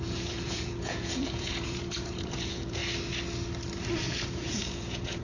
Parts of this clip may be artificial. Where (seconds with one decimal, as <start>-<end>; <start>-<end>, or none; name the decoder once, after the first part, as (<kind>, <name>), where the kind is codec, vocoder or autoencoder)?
0.0-2.8 (vocoder, Vocos); 4.0-5.2